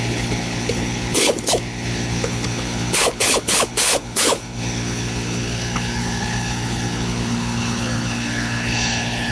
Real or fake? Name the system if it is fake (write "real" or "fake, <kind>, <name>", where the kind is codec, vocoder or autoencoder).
fake, codec, HILCodec